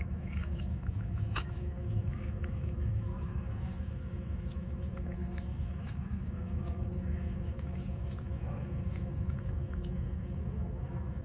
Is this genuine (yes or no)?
no